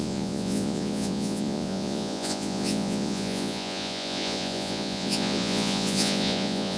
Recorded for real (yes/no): no